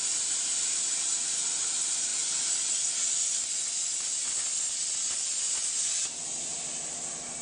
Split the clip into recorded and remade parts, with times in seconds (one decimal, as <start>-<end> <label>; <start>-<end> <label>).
0.0-7.4 recorded